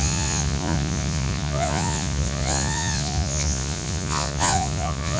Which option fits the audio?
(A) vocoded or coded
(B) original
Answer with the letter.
A